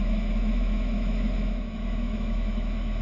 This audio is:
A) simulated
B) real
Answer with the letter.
A